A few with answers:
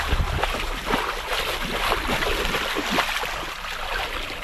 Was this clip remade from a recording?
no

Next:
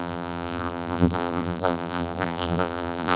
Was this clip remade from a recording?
yes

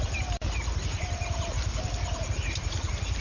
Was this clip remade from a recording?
no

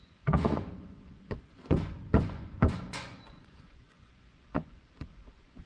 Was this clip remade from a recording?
yes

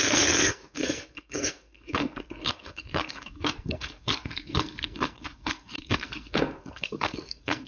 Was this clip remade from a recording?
yes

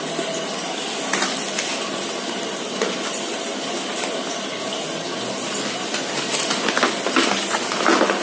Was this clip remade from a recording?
no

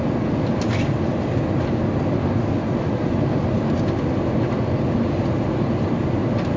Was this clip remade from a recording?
no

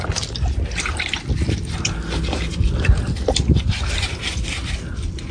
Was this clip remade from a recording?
no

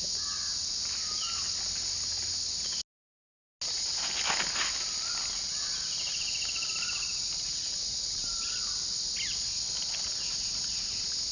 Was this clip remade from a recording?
no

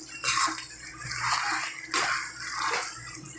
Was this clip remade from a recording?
no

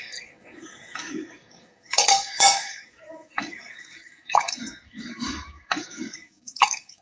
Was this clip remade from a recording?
yes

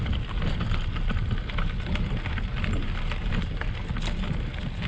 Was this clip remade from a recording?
no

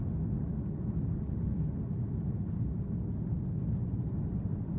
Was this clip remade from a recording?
no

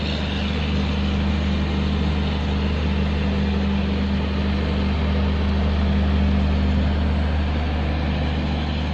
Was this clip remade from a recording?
no